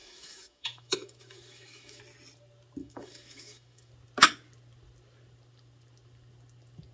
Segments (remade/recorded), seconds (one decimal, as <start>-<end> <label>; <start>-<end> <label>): 0.0-2.0 remade; 2.0-2.8 recorded; 2.8-3.9 remade; 3.9-6.9 recorded